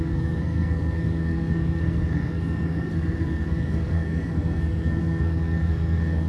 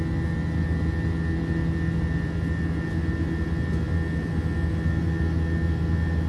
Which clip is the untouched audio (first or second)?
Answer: second